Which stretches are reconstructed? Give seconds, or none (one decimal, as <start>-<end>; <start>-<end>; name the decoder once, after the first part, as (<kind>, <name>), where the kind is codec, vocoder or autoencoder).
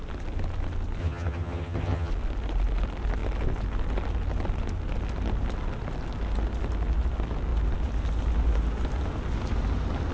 1.0-2.1 (vocoder, HiFi-GAN)